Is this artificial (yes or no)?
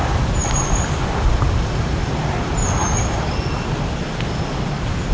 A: no